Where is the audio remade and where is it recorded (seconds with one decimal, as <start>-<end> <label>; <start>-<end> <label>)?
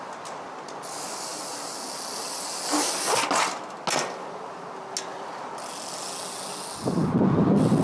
0.0-7.8 recorded